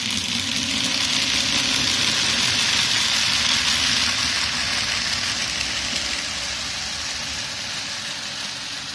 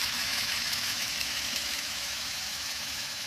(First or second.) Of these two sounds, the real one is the first